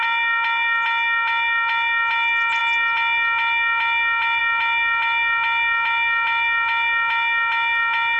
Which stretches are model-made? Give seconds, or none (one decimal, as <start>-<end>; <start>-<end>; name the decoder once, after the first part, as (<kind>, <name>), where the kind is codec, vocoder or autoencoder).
none